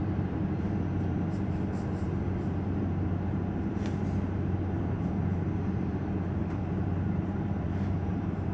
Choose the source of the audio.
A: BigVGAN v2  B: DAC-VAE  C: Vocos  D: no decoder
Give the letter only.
A